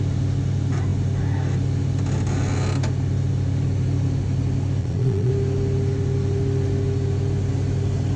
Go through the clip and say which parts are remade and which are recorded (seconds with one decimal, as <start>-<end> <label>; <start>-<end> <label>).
0.0-4.8 recorded; 4.8-5.3 remade; 5.3-8.2 recorded